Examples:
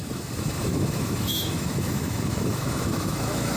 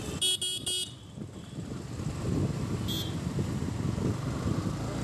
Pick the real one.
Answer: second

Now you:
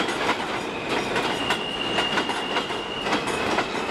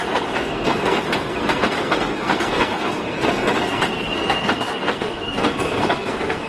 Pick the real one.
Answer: first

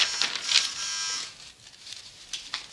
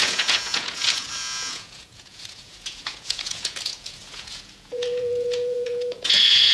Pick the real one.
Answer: first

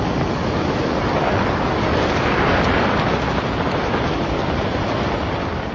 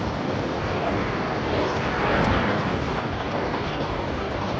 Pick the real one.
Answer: first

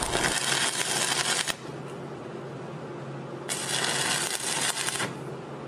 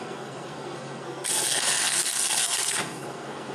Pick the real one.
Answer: first